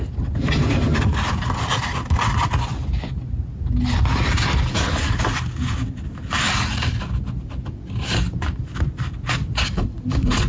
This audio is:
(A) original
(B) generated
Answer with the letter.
A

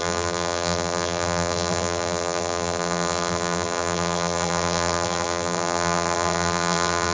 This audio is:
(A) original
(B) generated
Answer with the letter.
B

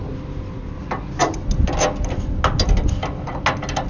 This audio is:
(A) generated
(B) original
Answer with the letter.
B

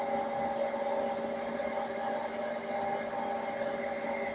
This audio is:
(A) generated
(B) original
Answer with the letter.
B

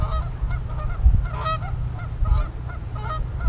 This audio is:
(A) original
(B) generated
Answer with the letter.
A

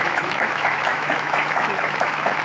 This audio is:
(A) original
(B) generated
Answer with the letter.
B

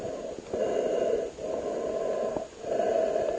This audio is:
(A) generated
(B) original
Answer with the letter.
B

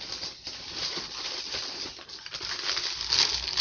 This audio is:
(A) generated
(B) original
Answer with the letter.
B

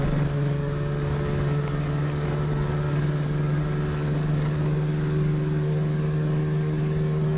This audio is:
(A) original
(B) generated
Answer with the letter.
B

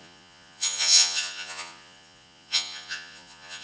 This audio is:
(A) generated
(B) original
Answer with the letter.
A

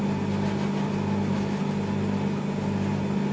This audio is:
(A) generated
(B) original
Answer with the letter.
B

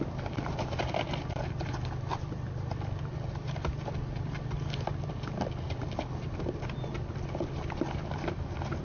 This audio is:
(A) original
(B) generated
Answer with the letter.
A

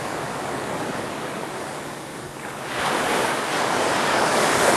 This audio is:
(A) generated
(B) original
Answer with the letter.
A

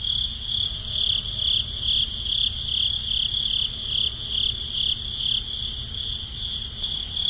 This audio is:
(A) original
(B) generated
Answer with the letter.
A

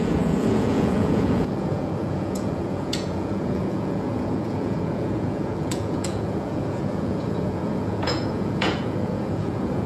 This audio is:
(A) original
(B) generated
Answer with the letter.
B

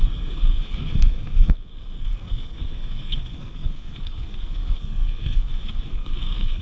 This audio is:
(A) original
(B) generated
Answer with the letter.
B